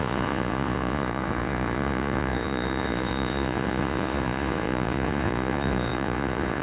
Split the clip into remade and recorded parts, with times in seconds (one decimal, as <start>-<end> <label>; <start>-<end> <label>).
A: 0.0-6.6 remade